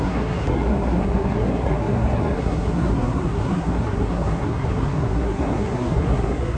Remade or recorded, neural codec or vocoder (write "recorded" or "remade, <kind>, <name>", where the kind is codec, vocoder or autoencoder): remade, codec, SNAC